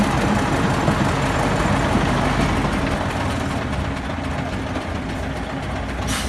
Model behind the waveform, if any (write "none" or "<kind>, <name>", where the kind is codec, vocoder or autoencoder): none